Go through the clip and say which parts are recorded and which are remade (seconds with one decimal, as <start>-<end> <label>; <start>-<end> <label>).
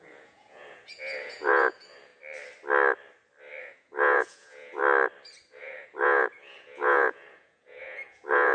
0.0-2.1 remade; 2.1-3.6 recorded; 3.6-4.8 remade; 4.8-5.5 recorded; 5.5-8.5 remade